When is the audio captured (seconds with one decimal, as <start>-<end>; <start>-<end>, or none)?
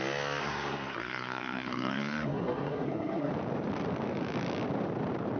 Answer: 0.0-0.4; 3.3-5.4